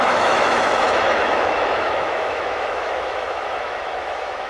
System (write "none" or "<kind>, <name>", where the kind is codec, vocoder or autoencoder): autoencoder, DAC-VAE